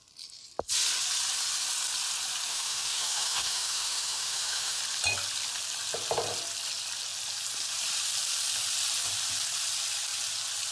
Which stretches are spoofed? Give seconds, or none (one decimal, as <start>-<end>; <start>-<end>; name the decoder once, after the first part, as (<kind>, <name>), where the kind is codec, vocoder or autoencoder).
2.5-4.8 (autoencoder, DAC-VAE)